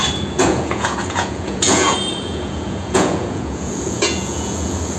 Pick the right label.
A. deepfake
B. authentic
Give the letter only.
A